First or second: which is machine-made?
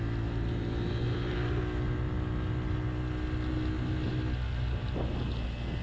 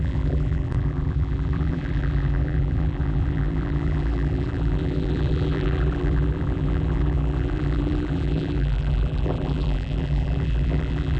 second